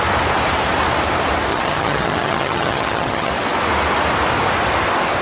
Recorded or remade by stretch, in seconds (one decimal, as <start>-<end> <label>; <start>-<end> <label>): 0.0-1.5 recorded; 1.5-3.3 remade; 3.3-5.2 recorded